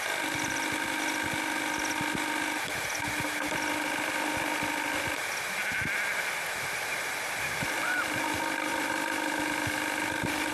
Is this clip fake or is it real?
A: real